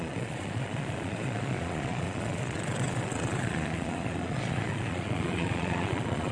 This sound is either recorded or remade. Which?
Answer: remade